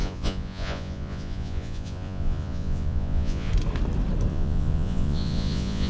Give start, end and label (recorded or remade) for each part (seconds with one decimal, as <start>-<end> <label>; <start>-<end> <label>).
0.0-3.5 remade; 3.5-4.3 recorded; 4.3-5.9 remade